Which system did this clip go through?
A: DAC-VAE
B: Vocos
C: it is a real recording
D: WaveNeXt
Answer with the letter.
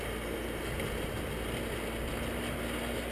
C